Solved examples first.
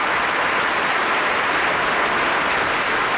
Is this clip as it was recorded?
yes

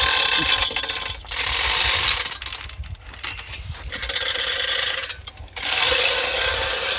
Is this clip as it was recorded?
yes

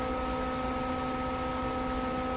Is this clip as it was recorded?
yes